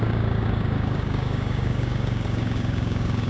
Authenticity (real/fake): fake